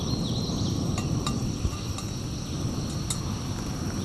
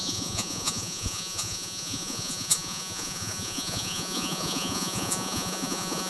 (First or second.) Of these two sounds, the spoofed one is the second